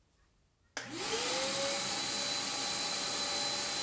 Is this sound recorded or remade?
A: recorded